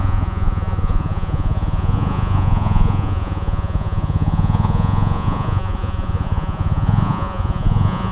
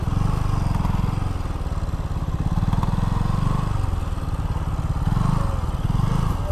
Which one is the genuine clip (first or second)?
second